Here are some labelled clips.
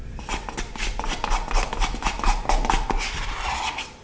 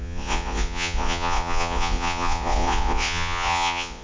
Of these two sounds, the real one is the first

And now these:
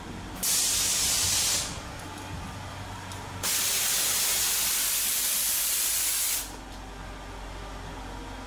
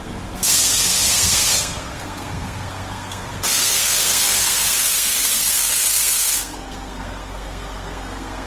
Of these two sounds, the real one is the first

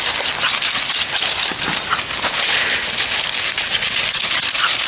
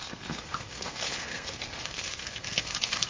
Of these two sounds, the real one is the first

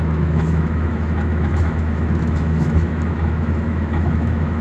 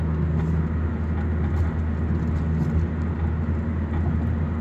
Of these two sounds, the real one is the second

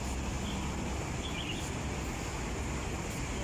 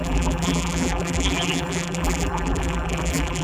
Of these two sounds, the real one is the first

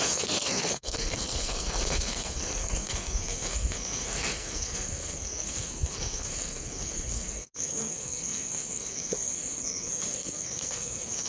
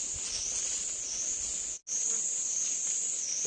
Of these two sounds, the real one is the second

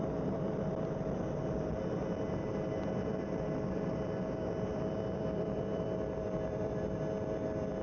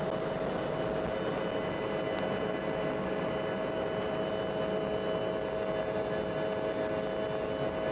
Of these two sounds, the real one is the second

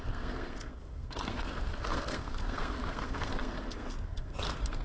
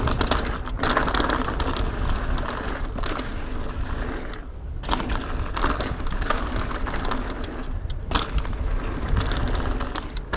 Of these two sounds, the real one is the second